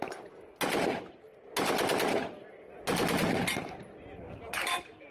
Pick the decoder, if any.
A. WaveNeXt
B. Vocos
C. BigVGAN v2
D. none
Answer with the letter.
D